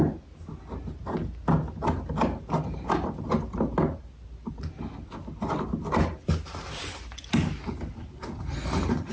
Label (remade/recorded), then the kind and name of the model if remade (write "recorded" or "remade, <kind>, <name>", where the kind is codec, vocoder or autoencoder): recorded